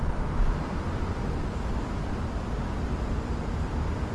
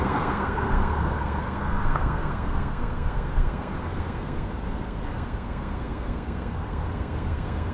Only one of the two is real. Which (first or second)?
first